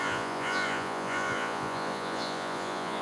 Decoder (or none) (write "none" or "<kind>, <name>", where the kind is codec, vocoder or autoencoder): vocoder, Vocos